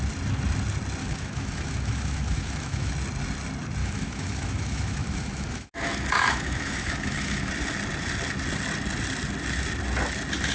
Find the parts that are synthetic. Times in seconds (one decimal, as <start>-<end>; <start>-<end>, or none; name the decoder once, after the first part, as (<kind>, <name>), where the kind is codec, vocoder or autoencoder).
1.0-2.9 (autoencoder, DAC-VAE); 3.8-7.5